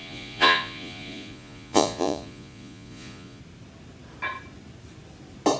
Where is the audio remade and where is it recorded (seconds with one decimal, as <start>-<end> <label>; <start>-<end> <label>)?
0.0-3.4 remade; 3.4-5.6 recorded